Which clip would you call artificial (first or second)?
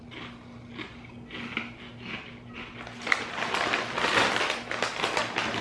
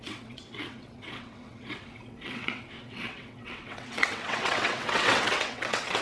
second